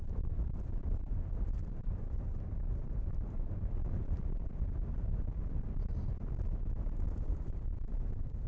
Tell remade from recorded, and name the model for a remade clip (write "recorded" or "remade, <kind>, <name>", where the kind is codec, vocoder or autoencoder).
remade, vocoder, BigVGAN v2